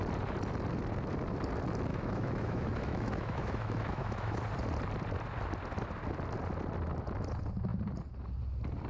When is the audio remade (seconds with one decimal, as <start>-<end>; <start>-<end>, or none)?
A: 1.9-4.4